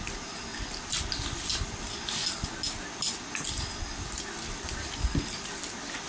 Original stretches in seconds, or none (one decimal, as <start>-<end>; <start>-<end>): 0.0-6.1